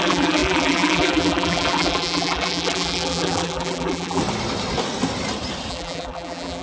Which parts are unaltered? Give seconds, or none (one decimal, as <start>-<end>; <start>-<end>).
4.2-5.7